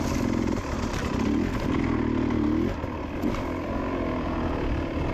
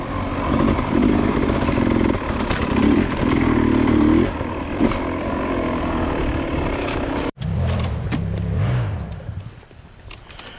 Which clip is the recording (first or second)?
first